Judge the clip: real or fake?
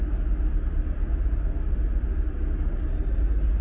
real